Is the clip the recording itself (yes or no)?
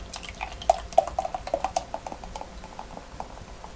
yes